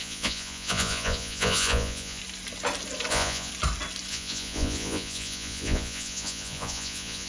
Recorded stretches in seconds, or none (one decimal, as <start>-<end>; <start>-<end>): 2.2-3.1; 3.5-4.1

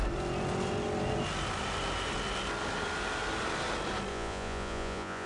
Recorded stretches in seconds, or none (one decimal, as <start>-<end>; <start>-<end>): 0.0-4.1

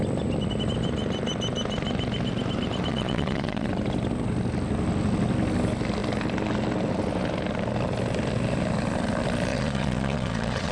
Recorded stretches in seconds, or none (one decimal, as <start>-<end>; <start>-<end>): 0.0-2.9; 3.7-9.5

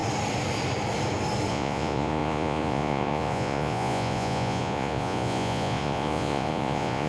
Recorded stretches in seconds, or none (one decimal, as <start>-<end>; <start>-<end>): 0.0-1.5

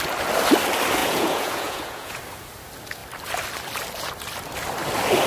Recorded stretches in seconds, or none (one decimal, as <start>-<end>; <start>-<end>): 0.0-1.0; 2.2-5.3